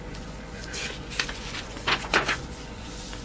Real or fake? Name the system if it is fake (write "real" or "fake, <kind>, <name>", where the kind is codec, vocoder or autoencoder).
fake, vocoder, Vocos